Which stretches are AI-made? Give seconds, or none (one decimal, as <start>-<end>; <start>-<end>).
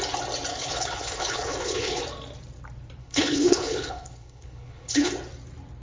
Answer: 0.5-2.0; 3.0-5.1